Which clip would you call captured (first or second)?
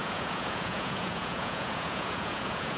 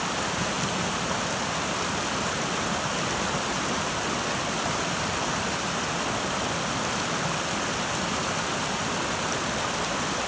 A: second